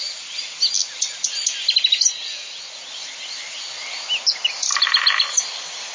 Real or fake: real